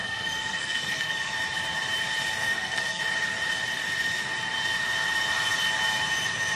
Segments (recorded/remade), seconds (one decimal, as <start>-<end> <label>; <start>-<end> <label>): 0.0-1.3 remade; 1.3-2.4 recorded; 2.4-3.0 remade; 3.0-6.6 recorded